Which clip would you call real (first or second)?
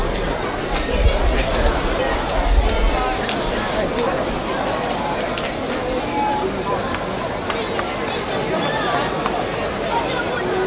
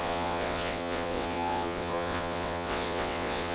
first